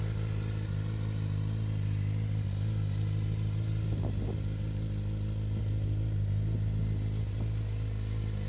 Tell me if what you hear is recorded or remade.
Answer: recorded